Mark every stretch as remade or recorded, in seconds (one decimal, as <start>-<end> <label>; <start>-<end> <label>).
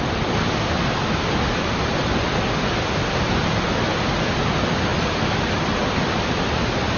0.0-7.0 recorded